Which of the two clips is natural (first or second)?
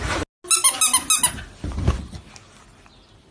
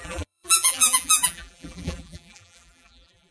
first